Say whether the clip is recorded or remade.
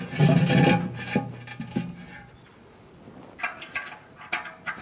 recorded